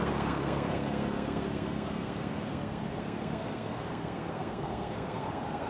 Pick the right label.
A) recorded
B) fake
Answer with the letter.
B